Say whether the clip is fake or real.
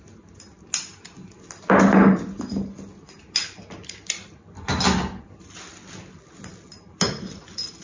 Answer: real